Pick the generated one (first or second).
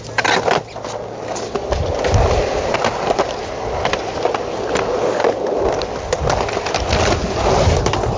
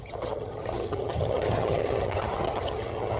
second